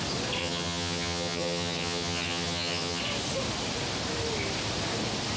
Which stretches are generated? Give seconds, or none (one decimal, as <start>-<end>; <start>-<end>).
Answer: 0.4-3.0